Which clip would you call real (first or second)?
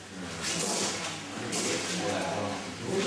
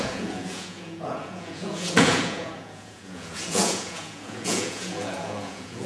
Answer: first